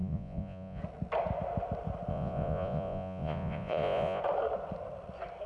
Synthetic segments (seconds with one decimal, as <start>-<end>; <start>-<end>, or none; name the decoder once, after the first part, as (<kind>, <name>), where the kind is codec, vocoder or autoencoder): 0.0-0.8 (vocoder, Vocos); 2.1-4.2

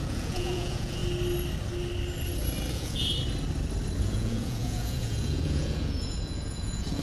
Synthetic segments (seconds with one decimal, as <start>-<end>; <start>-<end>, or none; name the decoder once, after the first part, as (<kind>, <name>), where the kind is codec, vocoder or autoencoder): 0.0-1.0 (vocoder, Vocos); 2.7-3.1; 4.0-7.0

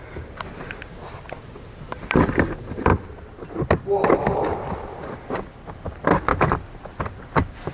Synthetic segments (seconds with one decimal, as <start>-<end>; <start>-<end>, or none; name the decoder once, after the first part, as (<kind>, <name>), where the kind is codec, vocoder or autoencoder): 0.0-2.9 (vocoder, BigVGAN v2); 4.2-6.3; 6.9-7.7

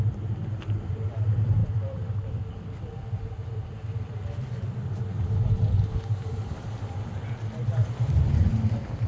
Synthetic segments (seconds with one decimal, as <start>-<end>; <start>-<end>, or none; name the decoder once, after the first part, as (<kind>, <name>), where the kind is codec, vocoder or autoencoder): 0.0-7.2 (vocoder, BigVGAN v2); 8.1-9.1

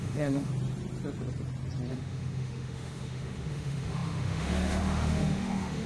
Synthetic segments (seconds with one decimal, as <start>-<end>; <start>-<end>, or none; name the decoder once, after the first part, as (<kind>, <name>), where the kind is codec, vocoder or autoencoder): 0.0-0.5 (autoencoder, DAC-VAE); 1.9-5.9